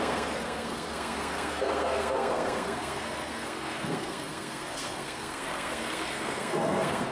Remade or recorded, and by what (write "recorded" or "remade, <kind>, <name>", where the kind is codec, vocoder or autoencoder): remade, codec, SNAC